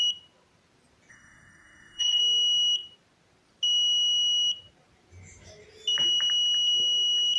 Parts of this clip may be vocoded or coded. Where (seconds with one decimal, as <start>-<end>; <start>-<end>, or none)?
1.1-2.2